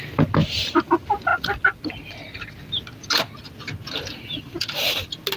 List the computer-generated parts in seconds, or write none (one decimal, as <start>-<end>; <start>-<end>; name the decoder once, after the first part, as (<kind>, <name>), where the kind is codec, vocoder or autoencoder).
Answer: none